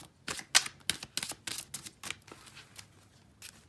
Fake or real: real